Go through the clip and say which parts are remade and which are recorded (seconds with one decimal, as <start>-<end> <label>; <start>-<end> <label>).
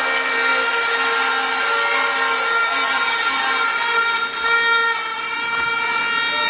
0.0-2.6 recorded; 2.6-3.2 remade; 3.2-5.1 recorded; 5.1-6.0 remade; 6.0-6.5 recorded